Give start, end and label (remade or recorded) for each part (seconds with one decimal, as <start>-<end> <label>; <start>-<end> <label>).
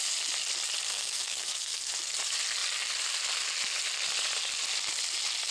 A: 0.0-0.9 recorded; 0.9-1.9 remade; 1.9-5.5 recorded